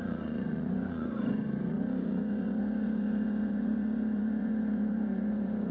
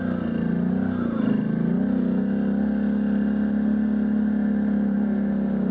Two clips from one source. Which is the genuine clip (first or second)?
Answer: second